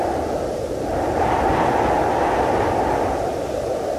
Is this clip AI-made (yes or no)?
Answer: no